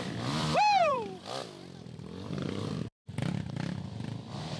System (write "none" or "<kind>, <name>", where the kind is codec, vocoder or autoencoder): vocoder, BigVGAN v2